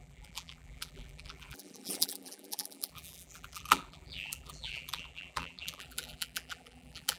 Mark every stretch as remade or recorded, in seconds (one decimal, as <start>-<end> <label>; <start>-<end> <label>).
0.0-7.2 remade